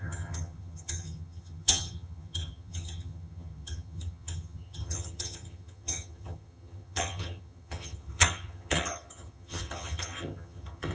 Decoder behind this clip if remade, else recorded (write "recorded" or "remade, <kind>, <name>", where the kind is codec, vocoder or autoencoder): remade, vocoder, HiFi-GAN